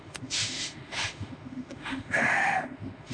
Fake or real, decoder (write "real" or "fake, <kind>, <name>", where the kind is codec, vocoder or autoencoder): fake, autoencoder, DAC-VAE